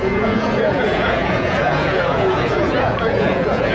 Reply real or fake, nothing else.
fake